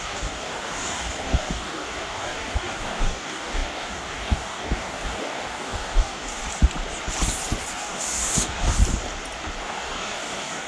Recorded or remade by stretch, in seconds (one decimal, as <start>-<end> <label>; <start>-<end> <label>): 0.0-6.4 remade; 6.4-7.7 recorded; 7.7-8.8 remade; 8.8-9.6 recorded; 9.6-10.7 remade